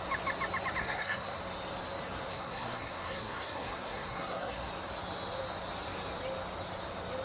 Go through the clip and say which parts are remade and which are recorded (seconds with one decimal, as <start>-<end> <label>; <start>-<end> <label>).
0.0-0.8 recorded; 0.8-1.4 remade; 1.4-2.3 recorded; 2.3-4.7 remade; 4.7-7.2 recorded